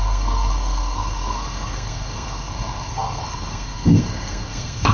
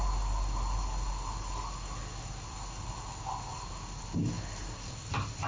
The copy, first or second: first